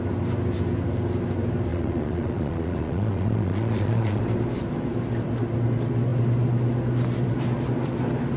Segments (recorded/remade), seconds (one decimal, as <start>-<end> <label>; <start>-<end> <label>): 0.0-1.7 recorded; 1.7-4.2 remade; 4.2-8.4 recorded